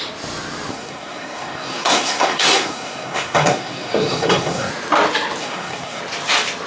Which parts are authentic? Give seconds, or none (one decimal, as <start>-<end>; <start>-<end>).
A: 0.0-0.7; 4.7-5.4; 6.0-6.7